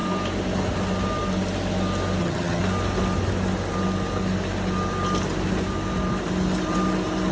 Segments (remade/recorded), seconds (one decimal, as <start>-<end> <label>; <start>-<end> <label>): 0.0-2.2 recorded; 2.2-2.6 remade; 2.6-7.3 recorded